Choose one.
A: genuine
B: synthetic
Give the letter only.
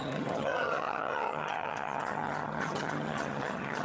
B